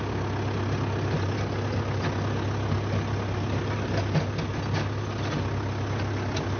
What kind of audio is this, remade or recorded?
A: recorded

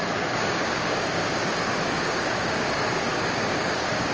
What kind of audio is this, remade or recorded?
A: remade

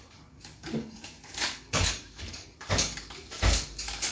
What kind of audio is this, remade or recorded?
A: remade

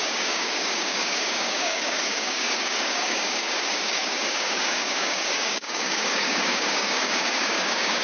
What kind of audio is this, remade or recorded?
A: remade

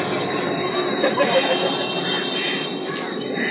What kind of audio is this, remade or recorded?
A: recorded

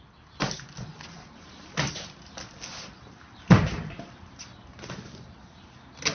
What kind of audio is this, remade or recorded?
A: recorded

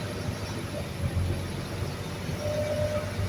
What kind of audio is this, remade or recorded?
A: recorded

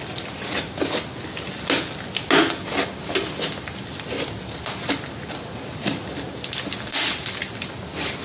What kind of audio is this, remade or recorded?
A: recorded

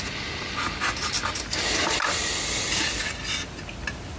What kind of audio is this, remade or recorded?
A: recorded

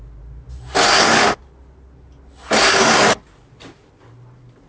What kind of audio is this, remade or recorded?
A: recorded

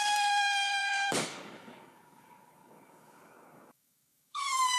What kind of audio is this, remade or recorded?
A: remade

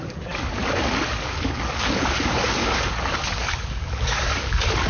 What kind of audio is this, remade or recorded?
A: remade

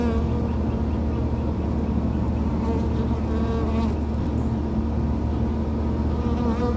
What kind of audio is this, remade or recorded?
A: recorded